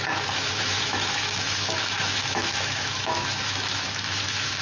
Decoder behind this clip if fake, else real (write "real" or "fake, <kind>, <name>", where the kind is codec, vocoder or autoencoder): fake, autoencoder, DAC-VAE